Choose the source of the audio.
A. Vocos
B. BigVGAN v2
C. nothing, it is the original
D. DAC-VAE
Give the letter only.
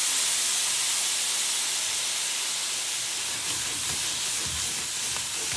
C